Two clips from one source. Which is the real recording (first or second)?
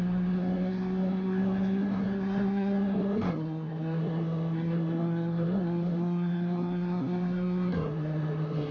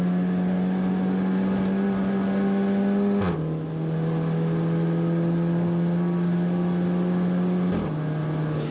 second